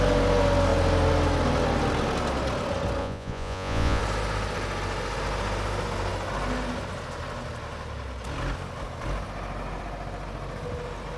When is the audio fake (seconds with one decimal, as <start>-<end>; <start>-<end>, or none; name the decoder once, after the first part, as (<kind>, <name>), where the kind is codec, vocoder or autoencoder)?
3.0-4.0 (vocoder, Vocos)